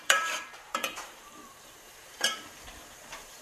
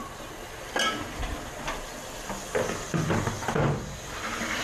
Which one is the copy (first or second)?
first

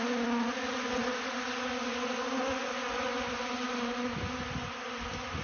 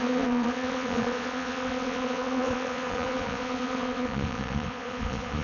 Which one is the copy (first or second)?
second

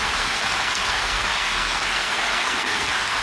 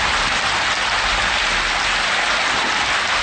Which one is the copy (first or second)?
first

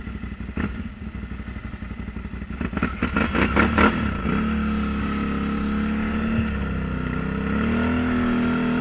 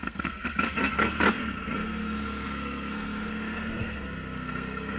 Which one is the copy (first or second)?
second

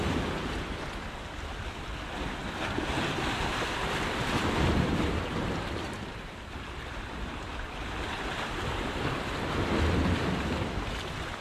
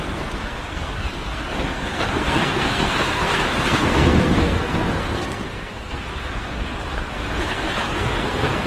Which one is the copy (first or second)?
second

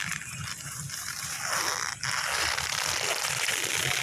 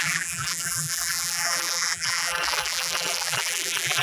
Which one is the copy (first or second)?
second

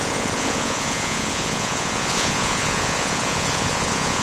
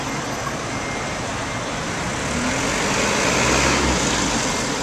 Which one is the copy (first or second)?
first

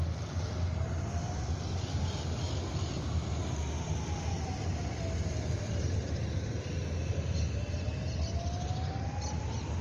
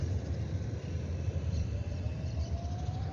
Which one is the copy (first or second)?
second